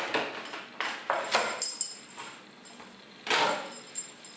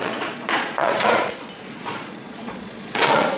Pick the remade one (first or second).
second